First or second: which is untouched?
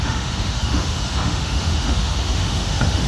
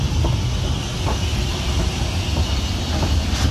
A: second